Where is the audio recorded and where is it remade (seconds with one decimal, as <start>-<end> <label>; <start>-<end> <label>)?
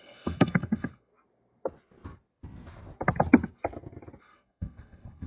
0.0-1.1 remade; 1.1-4.2 recorded; 4.2-5.3 remade